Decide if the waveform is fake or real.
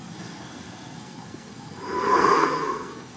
fake